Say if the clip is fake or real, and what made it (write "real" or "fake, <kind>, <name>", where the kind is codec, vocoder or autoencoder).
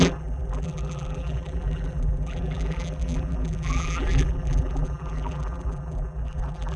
fake, vocoder, BigVGAN v2